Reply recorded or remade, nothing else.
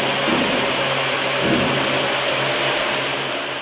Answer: recorded